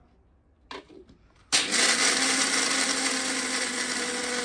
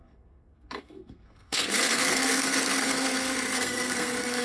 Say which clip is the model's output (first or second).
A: second